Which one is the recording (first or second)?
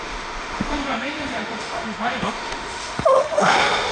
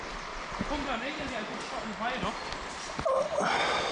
second